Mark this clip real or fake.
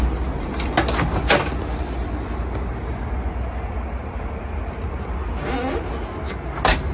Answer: real